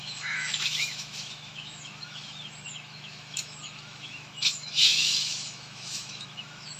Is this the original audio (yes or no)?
no